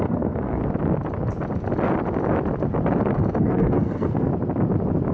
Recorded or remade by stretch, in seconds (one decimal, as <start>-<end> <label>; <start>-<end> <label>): 0.0-0.6 remade; 0.6-3.4 recorded; 3.4-4.3 remade; 4.3-5.1 recorded